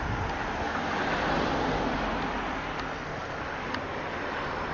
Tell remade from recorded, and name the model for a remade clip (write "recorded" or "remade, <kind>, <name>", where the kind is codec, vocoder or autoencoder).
recorded